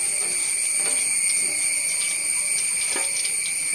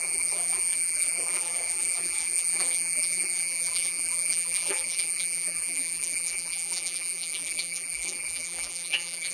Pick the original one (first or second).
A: first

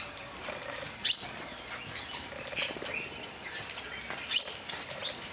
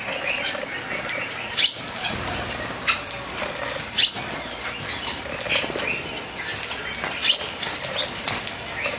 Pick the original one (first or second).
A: second